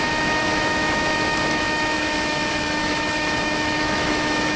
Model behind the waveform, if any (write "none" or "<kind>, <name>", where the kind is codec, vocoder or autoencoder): autoencoder, DAC-VAE